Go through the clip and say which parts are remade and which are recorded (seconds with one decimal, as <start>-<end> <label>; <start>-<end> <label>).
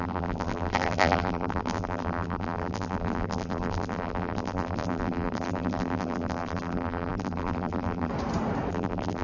0.0-8.1 remade; 8.1-8.7 recorded; 8.7-9.2 remade